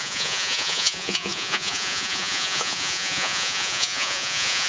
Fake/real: fake